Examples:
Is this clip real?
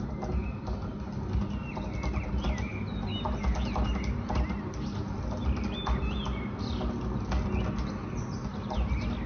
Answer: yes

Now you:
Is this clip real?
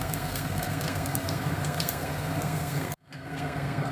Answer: no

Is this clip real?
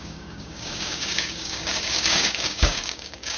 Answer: no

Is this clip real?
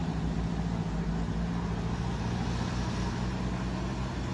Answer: yes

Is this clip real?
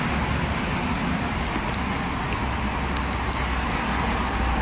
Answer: yes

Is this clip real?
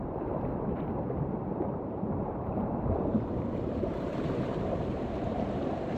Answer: no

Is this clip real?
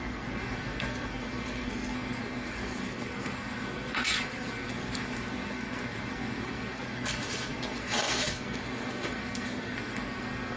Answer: no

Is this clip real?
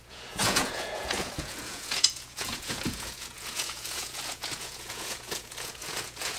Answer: no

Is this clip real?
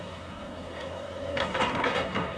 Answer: no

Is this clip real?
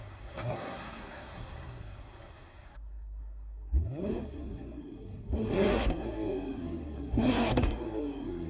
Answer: no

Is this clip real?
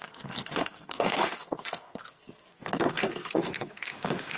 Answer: no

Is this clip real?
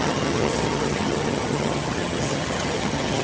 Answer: no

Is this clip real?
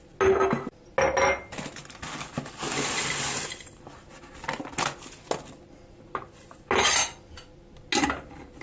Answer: yes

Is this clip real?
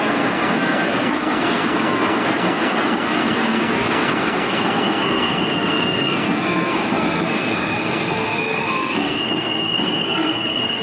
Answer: no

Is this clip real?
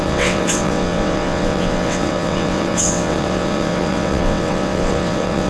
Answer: no